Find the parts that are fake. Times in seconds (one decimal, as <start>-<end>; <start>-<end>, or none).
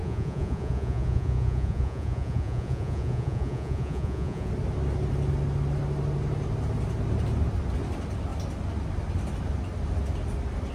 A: 0.0-4.5